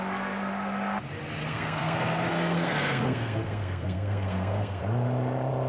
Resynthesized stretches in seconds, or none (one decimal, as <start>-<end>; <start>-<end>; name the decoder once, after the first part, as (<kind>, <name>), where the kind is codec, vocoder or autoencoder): 1.4-4.8 (codec, SNAC)